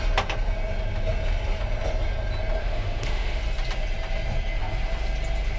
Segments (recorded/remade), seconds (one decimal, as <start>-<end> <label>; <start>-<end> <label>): 0.0-2.6 recorded; 2.6-3.4 remade; 3.4-5.6 recorded